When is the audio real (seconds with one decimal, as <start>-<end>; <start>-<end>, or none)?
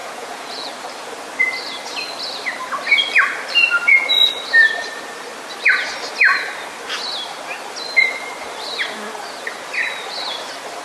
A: 0.7-10.8